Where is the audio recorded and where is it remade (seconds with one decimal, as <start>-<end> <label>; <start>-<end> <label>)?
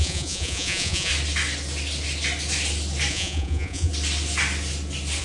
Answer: 0.0-1.1 remade; 1.1-3.1 recorded; 3.1-3.9 remade; 3.9-5.2 recorded